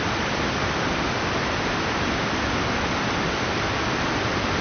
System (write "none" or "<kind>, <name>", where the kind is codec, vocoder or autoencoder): none